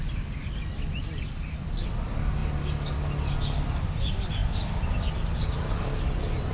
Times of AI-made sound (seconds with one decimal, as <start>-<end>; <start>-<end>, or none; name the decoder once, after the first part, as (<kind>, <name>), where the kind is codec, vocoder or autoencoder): none